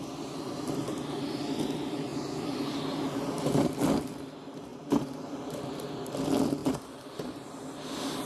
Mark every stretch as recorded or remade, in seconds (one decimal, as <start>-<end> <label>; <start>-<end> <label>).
0.0-2.1 recorded; 2.1-3.7 remade; 3.7-4.7 recorded; 4.7-5.9 remade; 5.9-6.6 recorded; 6.6-7.7 remade; 7.7-8.3 recorded